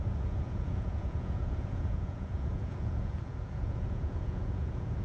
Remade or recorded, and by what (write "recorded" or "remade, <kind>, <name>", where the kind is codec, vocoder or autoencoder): remade, vocoder, Vocos